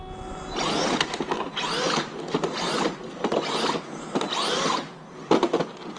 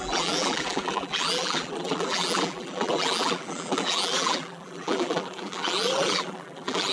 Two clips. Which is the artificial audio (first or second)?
second